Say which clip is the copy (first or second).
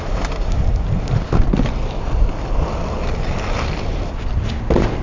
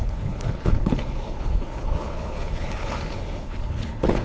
second